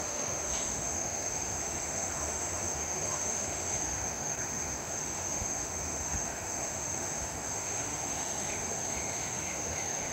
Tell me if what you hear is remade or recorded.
remade